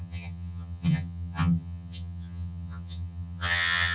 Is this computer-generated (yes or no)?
yes